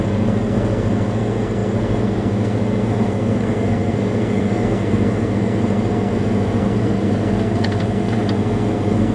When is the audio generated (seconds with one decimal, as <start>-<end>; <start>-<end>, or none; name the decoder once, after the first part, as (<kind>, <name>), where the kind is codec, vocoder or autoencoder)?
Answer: 0.0-9.1 (codec, SNAC)